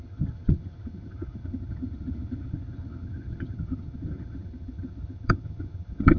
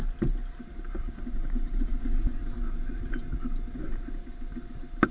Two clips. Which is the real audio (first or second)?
second